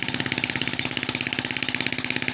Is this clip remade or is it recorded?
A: recorded